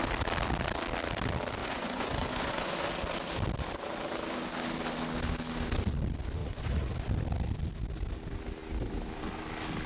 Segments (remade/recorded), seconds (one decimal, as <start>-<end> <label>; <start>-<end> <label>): 0.0-1.6 recorded; 1.6-2.7 remade; 2.7-6.4 recorded; 6.4-6.9 remade; 6.9-9.9 recorded